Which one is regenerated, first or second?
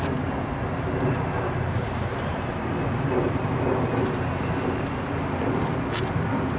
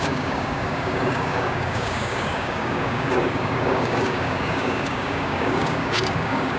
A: second